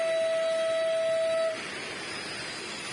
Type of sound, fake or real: real